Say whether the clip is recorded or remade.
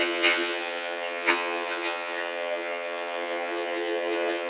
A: remade